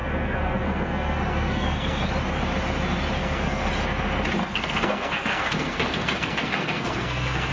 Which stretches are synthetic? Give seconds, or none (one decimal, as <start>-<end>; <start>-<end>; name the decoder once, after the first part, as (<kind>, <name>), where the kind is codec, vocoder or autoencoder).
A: 0.0-2.1 (codec, SNAC); 3.2-3.7; 4.4-7.5